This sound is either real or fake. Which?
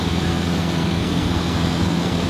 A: fake